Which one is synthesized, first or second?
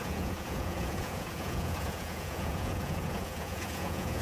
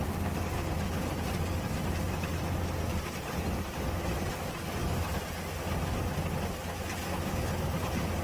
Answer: first